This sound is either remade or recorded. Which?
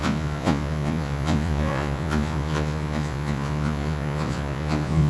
remade